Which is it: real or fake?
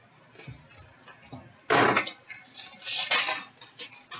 real